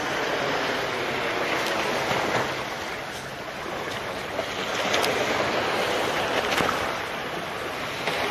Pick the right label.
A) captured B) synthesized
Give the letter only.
A